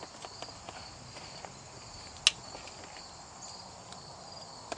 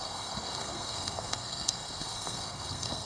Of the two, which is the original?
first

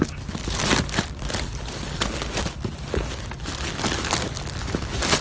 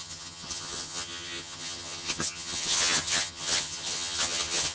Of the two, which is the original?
first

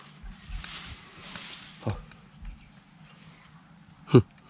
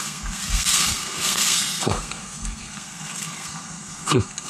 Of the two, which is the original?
first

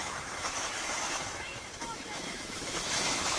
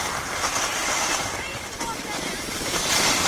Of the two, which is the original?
second